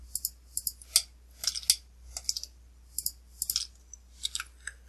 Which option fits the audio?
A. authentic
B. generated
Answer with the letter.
A